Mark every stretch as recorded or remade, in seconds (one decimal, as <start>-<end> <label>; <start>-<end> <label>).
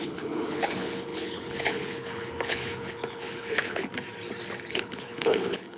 0.0-3.9 remade; 3.9-4.7 recorded; 4.7-5.8 remade